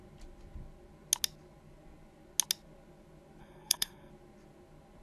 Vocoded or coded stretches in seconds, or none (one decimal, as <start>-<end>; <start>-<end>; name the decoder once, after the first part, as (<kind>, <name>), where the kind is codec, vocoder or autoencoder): 3.4-4.1 (codec, SNAC)